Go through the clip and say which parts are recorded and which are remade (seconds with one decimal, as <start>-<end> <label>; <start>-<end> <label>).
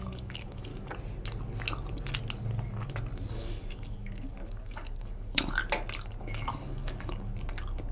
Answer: 0.0-0.7 remade; 0.7-3.3 recorded; 3.3-5.6 remade; 5.6-6.2 recorded; 6.2-7.3 remade; 7.3-7.9 recorded